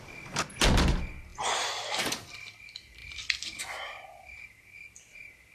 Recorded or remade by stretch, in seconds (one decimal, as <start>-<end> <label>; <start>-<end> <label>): 0.0-5.5 recorded